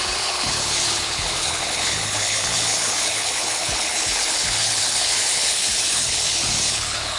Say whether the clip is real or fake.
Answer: fake